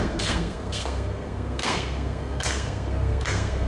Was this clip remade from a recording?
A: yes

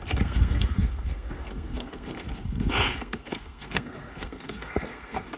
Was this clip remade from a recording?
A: yes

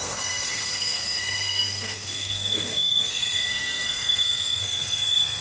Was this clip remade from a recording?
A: yes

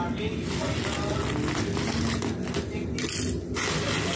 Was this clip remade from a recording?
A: no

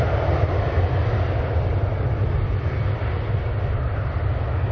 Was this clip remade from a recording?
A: no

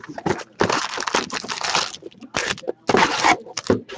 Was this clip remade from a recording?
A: no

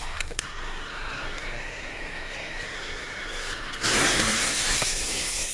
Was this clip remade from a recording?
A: yes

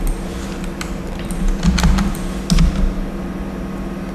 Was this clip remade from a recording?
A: no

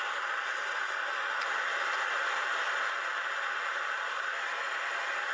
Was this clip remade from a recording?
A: no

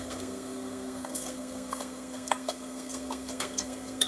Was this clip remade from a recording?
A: yes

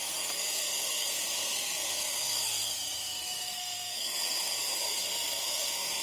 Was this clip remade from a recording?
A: yes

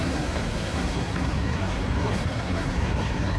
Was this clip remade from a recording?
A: yes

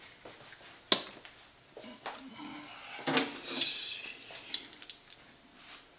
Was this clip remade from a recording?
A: no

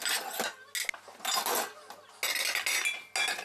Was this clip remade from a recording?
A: no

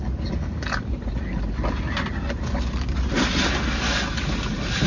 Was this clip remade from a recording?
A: no